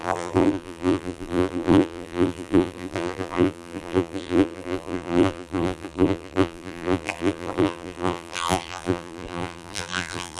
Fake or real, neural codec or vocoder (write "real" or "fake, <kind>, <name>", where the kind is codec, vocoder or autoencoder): fake, vocoder, BigVGAN v2